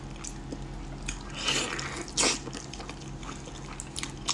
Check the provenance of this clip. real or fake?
real